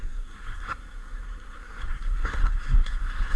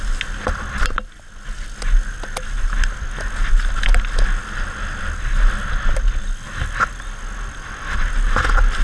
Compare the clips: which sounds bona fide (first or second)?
second